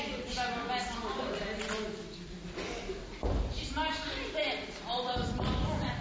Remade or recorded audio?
recorded